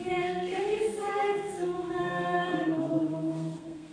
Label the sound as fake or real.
fake